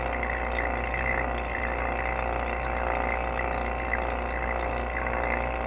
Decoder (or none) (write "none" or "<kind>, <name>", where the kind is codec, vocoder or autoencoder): vocoder, BigVGAN v2